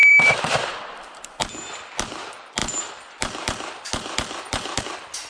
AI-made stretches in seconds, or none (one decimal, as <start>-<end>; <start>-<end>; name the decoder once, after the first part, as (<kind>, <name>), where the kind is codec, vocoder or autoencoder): 0.0-1.4 (vocoder, BigVGAN v2); 2.6-4.8